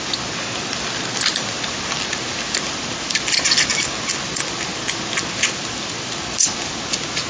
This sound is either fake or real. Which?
real